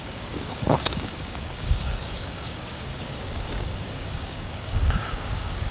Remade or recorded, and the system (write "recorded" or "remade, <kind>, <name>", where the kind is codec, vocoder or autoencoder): remade, codec, DAC